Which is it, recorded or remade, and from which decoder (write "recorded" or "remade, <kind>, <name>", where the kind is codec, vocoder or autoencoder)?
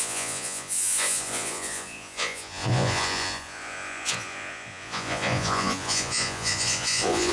remade, vocoder, Vocos